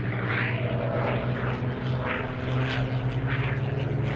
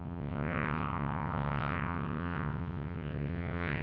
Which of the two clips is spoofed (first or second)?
second